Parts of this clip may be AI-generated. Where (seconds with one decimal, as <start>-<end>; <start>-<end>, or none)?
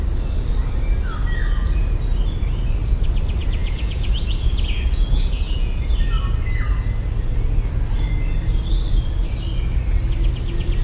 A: 1.4-2.0; 3.6-5.9